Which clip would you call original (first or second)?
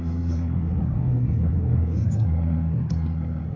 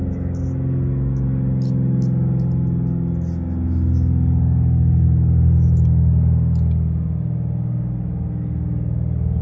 second